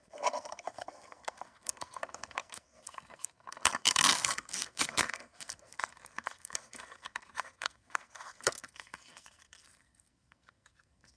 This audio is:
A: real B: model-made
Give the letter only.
B